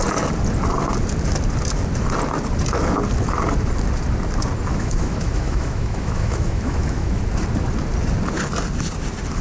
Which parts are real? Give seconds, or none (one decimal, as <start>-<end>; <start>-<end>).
0.0-4.7; 7.2-9.4